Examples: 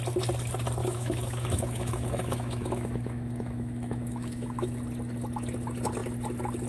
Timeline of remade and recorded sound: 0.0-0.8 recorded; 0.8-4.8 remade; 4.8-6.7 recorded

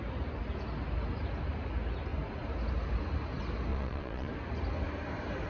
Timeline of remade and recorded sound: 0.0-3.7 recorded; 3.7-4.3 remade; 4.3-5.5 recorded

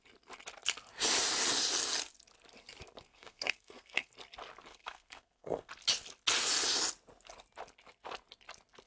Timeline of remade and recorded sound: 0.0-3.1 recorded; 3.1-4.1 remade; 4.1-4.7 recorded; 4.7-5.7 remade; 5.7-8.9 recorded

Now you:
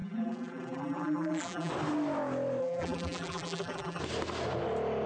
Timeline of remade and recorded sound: 0.0-1.7 remade; 1.7-2.6 recorded; 2.6-4.0 remade; 4.0-5.1 recorded

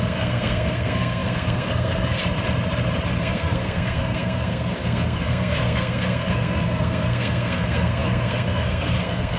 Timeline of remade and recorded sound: 0.0-2.2 remade; 2.2-3.2 recorded; 3.2-9.4 remade

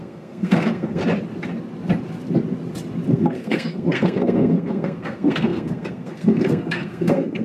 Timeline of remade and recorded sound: 0.0-1.0 remade; 1.0-3.1 recorded; 3.1-7.4 remade